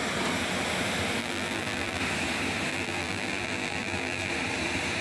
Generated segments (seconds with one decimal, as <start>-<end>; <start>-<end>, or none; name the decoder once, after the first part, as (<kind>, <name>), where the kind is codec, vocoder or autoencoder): 1.2-2.0 (vocoder, BigVGAN v2); 2.7-4.3